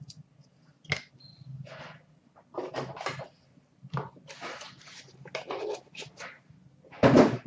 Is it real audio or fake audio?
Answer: real